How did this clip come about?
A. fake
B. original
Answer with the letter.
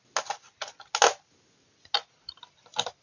B